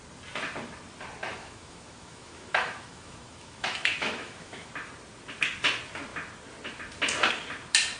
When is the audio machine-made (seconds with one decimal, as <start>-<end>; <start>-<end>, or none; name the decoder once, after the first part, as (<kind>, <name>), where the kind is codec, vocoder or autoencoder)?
1.3-4.7 (autoencoder, DAC-VAE)